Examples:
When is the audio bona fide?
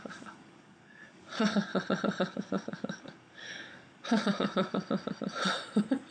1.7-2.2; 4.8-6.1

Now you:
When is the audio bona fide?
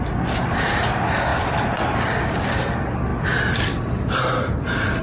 0.0-5.0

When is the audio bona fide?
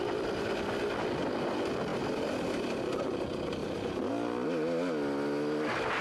0.0-6.0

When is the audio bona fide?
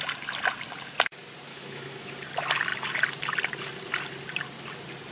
0.0-1.5; 2.1-5.1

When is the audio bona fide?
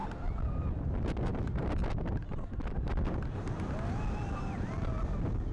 0.0-5.5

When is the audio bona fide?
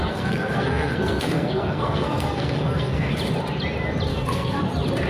3.1-4.1; 4.6-5.1